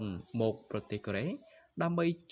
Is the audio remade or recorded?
recorded